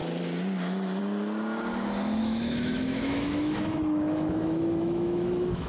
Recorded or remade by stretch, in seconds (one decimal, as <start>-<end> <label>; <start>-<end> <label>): 0.0-2.2 recorded; 2.2-5.7 remade